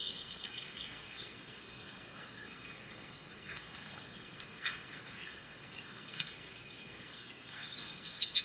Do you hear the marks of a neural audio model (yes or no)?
yes